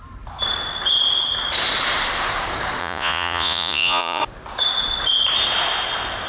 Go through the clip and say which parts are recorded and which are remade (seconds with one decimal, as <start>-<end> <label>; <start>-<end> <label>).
0.0-2.8 recorded; 2.8-4.2 remade; 4.2-6.3 recorded